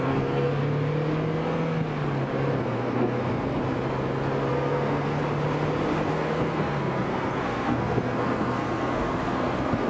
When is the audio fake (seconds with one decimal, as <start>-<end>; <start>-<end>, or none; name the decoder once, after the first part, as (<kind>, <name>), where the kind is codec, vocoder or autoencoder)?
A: 0.0-0.6 (codec, SNAC); 2.6-3.6; 4.5-5.2; 6.1-9.9